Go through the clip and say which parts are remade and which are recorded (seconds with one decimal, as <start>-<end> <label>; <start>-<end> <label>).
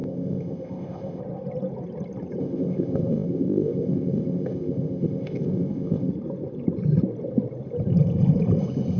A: 0.0-1.2 remade; 1.2-2.4 recorded; 2.4-6.1 remade; 6.1-9.0 recorded